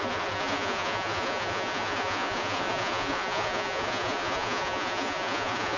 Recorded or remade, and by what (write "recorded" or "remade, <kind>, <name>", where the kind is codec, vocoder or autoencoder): remade, vocoder, Vocos